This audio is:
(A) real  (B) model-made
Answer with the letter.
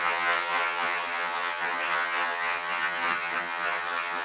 B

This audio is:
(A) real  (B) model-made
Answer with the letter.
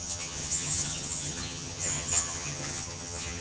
B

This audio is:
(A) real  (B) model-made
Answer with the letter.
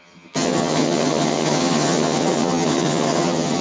B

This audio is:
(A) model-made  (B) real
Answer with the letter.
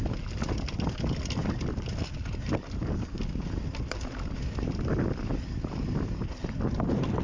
B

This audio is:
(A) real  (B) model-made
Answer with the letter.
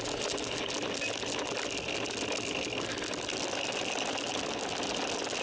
A